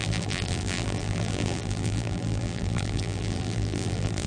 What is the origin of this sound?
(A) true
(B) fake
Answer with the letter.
B